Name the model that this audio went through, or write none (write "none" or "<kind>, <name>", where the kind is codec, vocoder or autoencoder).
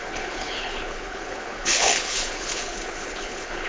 codec, HILCodec